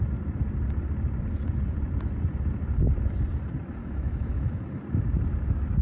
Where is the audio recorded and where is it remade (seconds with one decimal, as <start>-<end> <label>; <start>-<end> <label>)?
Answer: 0.0-3.8 recorded; 3.8-4.8 remade; 4.8-5.8 recorded